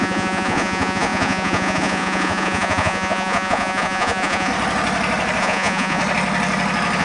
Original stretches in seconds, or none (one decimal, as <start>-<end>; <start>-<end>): 4.5-5.4; 6.0-7.0